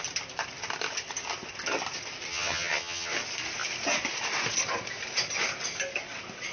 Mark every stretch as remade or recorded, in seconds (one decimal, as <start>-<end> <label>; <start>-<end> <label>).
0.0-2.3 recorded; 2.3-3.1 remade; 3.1-6.5 recorded